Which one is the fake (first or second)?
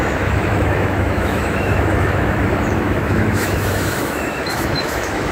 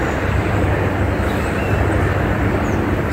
first